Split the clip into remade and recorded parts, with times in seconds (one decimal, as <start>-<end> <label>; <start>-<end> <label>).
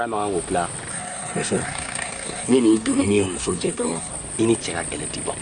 0.0-0.9 recorded; 0.9-4.1 remade; 4.1-5.4 recorded